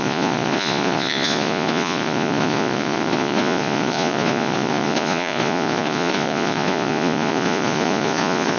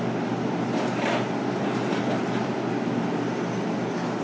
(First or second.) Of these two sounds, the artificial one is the first